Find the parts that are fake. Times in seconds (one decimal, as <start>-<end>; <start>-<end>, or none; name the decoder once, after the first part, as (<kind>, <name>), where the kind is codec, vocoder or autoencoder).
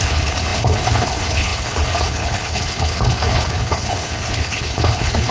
0.0-5.3 (codec, HILCodec)